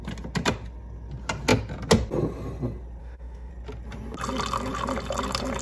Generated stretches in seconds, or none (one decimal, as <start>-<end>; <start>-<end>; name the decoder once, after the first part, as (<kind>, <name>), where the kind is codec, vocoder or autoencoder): 3.0-3.5 (autoencoder, DAC-VAE)